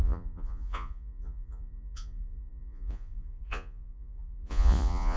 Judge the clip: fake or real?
fake